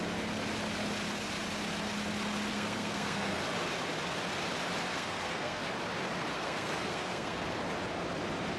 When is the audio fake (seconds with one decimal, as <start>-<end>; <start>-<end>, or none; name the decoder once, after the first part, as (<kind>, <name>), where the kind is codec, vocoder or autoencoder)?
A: 2.5-3.4 (codec, SNAC); 4.8-5.6; 6.3-7.6